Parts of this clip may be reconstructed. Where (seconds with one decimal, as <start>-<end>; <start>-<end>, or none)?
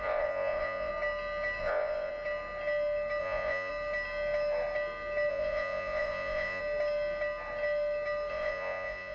0.0-0.9; 1.6-2.1; 3.2-3.7; 5.3-6.6; 8.3-9.1